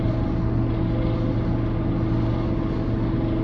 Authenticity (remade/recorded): recorded